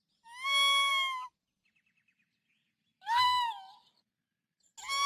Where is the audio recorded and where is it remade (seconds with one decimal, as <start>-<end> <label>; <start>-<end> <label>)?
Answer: 0.0-5.1 recorded